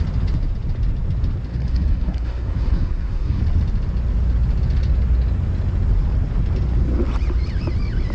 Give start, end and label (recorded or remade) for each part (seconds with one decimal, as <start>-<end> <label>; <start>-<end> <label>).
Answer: 0.0-1.5 recorded; 1.5-3.4 remade; 3.4-8.1 recorded